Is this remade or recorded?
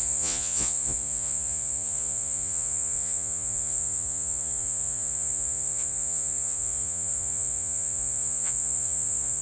remade